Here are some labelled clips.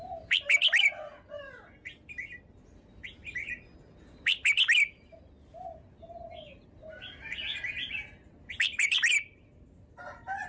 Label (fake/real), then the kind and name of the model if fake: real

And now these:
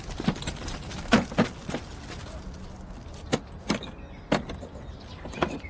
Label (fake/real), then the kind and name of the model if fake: real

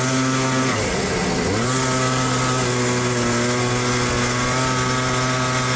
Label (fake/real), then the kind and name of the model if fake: real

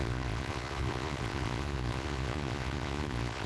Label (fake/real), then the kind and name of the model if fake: fake, vocoder, Vocos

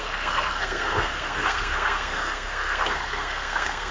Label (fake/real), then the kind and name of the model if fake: fake, codec, SNAC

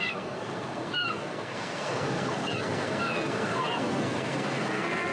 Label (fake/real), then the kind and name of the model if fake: fake, codec, SNAC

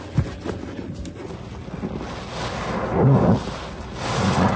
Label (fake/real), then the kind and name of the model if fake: real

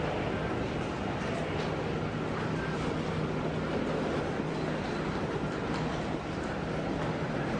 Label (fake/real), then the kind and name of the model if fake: real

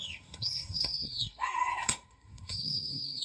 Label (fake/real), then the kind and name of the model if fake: fake, codec, SNAC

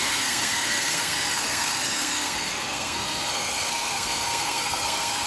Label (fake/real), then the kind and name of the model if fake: fake, codec, SNAC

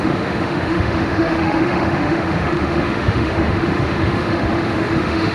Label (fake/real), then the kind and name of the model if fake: fake, autoencoder, DAC-VAE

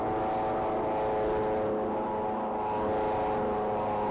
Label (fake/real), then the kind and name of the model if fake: real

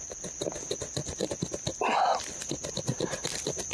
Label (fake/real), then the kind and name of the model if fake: real